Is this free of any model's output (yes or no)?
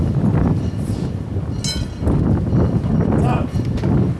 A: yes